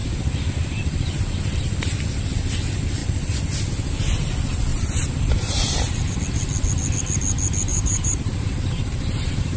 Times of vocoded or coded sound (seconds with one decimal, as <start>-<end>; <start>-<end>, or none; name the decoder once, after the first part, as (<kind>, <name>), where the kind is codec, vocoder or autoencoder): 4.7-6.2 (vocoder, BigVGAN v2); 7.7-9.6